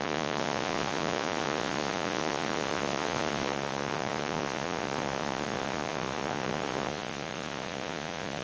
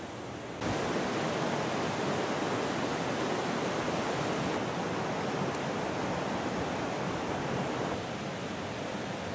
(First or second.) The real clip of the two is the second